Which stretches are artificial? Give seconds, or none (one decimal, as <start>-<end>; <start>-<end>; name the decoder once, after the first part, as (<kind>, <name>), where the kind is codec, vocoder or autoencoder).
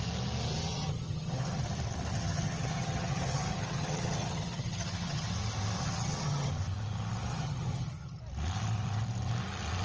0.7-1.6 (vocoder, HiFi-GAN); 2.1-5.3; 5.8-6.5; 7.3-8.2